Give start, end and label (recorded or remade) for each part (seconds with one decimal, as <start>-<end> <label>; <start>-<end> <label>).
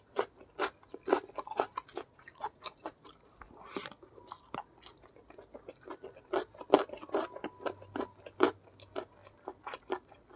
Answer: 0.0-1.9 recorded; 1.9-3.0 remade; 3.0-10.4 recorded